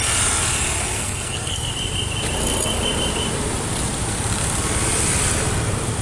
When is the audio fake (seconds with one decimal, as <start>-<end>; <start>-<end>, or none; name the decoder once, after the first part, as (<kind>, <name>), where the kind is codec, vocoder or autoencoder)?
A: 0.8-1.7 (codec, SNAC)

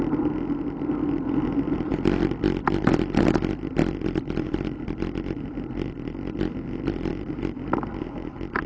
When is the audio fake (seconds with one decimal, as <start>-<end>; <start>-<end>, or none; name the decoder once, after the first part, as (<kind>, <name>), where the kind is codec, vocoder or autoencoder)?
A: none

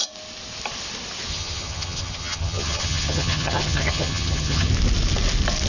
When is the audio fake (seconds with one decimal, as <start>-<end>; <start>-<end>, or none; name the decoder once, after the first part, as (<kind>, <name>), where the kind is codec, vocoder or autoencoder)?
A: 1.3-4.7 (vocoder, HiFi-GAN)

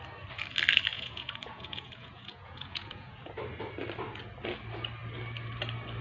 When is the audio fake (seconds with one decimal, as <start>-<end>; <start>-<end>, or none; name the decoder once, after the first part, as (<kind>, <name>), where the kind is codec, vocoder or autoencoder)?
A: 0.9-3.3 (vocoder, Vocos)